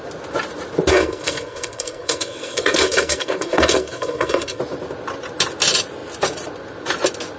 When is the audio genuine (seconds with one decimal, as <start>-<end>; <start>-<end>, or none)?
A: 0.0-0.9; 4.6-7.4